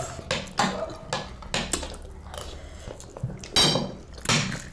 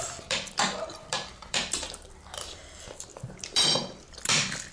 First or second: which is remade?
second